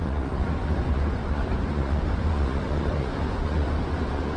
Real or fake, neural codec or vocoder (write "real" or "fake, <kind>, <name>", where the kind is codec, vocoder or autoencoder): fake, vocoder, Vocos